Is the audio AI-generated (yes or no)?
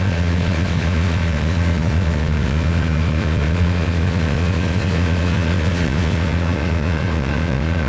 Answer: yes